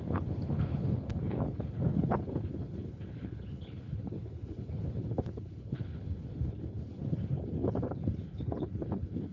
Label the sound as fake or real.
fake